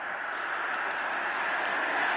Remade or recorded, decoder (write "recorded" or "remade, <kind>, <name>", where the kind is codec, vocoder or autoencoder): recorded